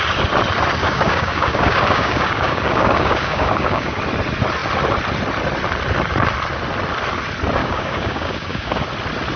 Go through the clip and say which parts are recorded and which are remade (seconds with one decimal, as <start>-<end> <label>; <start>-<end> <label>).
0.0-0.8 recorded; 0.8-4.0 remade; 4.0-7.6 recorded; 7.6-8.8 remade; 8.8-9.4 recorded